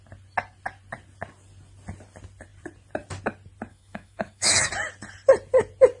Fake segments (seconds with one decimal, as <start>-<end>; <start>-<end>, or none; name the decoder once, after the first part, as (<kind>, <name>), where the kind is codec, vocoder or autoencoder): 3.7-4.7 (autoencoder, DAC-VAE)